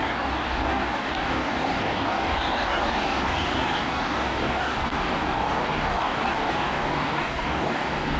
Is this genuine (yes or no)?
no